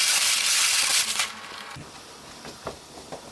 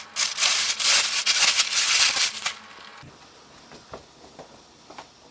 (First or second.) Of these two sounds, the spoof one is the first